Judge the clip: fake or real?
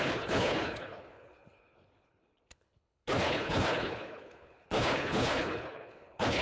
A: fake